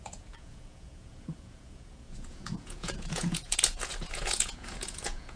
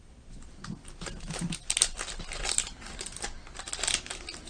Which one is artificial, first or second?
first